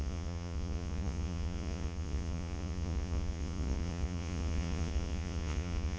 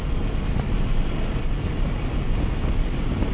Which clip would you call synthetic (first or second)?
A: first